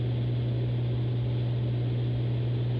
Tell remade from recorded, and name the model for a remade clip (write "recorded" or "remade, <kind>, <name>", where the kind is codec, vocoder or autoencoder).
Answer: recorded